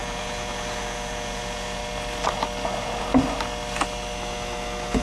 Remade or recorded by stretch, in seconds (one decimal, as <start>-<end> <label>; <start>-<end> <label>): 0.0-1.8 remade; 1.8-5.0 recorded